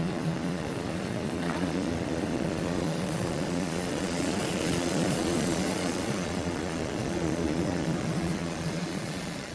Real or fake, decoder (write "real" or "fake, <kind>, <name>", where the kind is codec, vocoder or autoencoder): fake, vocoder, Vocos